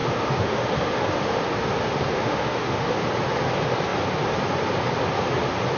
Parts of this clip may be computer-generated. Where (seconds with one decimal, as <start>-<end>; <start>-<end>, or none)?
0.0-3.1